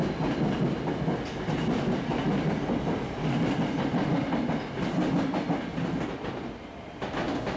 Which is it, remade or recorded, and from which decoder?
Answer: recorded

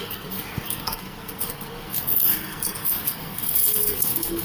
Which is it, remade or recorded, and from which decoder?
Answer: remade, codec, SNAC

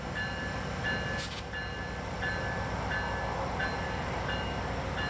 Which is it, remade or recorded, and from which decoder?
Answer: recorded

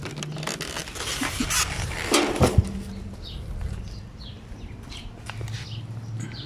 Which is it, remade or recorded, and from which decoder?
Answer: recorded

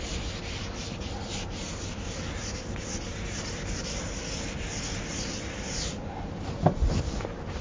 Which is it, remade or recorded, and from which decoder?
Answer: recorded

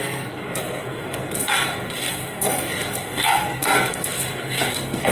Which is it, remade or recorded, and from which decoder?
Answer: remade, codec, SNAC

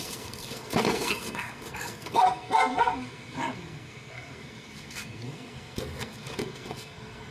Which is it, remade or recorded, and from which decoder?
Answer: remade, codec, SNAC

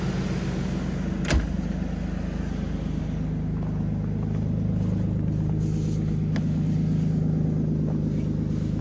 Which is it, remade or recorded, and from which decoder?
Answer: recorded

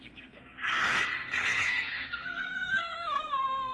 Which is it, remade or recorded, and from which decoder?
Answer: remade, codec, SNAC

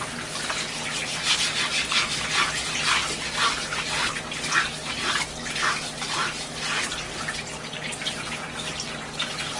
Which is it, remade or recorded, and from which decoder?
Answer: recorded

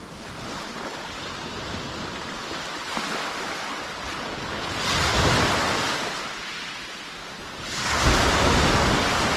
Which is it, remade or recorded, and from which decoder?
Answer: recorded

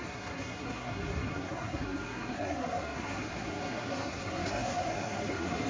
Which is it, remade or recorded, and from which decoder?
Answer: remade, codec, SNAC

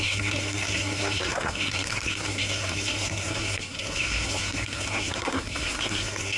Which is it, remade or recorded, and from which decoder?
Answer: remade, codec, SNAC